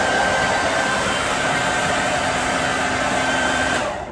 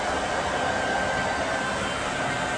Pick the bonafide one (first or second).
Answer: second